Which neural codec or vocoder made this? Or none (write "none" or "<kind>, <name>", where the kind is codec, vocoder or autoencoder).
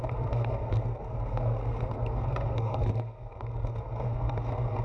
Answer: codec, SNAC